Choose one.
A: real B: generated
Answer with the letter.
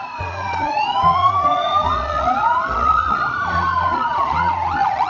B